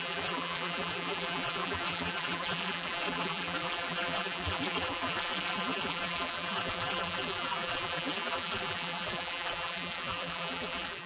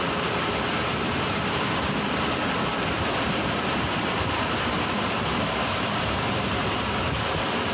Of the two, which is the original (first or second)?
second